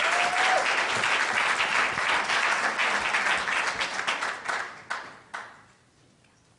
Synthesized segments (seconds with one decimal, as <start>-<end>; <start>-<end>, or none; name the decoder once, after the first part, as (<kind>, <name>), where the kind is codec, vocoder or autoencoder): none